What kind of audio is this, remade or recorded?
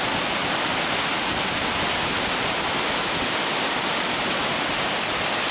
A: recorded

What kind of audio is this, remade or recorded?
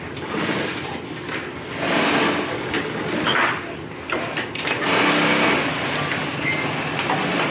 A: recorded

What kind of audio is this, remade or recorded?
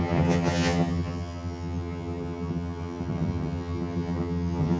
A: remade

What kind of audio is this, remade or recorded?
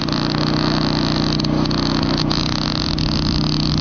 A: recorded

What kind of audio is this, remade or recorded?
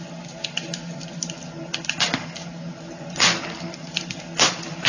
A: recorded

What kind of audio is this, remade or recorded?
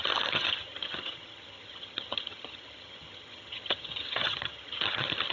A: remade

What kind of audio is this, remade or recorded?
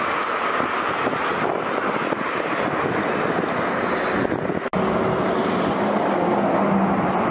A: recorded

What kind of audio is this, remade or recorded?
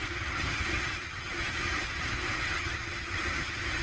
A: remade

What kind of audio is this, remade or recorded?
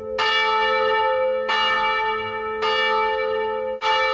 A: recorded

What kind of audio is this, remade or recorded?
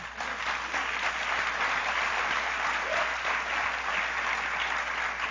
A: recorded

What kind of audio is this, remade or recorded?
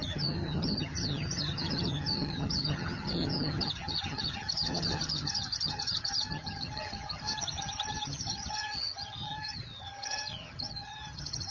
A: remade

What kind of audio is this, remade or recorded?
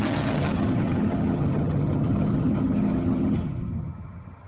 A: remade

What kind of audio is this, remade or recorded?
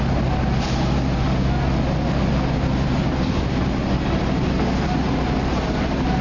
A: recorded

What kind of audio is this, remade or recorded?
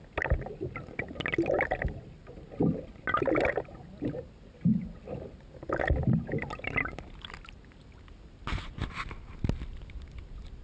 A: recorded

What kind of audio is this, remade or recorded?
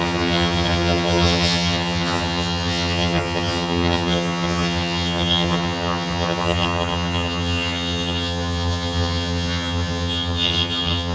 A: remade